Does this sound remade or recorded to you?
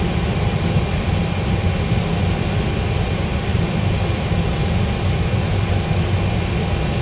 recorded